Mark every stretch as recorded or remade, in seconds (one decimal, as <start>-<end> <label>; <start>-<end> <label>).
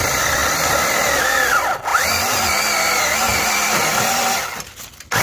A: 0.0-1.9 recorded; 1.9-2.6 remade; 2.6-3.3 recorded; 3.3-4.4 remade; 4.4-5.2 recorded